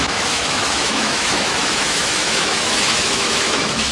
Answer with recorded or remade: remade